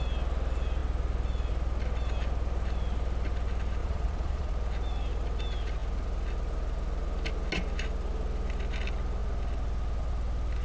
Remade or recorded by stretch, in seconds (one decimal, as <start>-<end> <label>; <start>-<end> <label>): 0.0-3.8 recorded; 3.8-4.5 remade; 4.5-10.6 recorded